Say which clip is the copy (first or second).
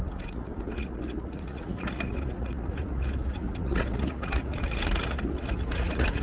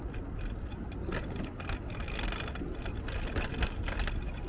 first